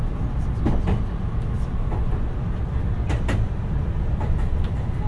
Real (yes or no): yes